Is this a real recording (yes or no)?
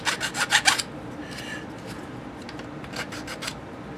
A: yes